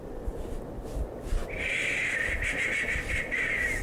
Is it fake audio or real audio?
real